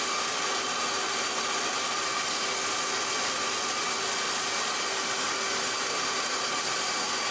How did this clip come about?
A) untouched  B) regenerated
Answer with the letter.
A